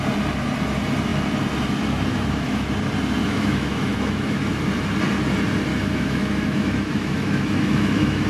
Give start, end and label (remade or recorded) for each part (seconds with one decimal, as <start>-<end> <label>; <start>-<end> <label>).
0.0-2.1 recorded; 2.1-2.7 remade; 2.7-3.2 recorded; 3.2-4.5 remade; 4.5-5.7 recorded; 5.7-8.3 remade